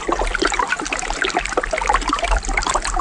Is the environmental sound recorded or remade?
recorded